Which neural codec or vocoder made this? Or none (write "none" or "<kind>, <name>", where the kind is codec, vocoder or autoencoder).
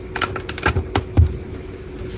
none